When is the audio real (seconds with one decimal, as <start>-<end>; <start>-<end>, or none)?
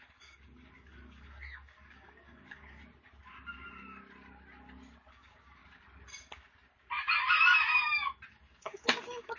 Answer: 2.8-5.1; 5.6-8.3